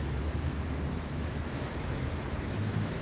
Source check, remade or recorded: remade